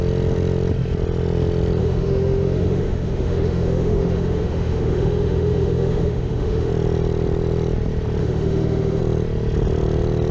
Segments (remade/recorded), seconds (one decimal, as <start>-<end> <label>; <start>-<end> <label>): 0.0-1.8 recorded; 1.8-6.7 remade; 6.7-8.2 recorded; 8.2-9.0 remade; 9.0-10.3 recorded